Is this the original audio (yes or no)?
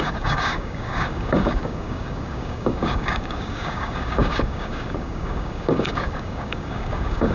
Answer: no